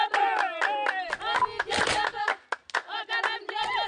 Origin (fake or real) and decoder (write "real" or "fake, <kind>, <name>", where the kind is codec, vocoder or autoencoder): real